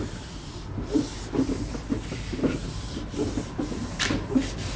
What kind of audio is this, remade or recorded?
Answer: remade